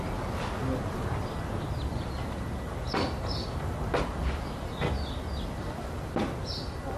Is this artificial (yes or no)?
no